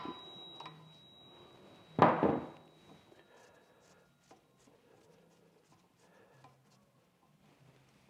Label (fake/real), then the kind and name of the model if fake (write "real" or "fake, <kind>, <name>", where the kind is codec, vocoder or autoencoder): real